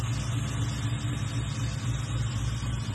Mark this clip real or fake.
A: real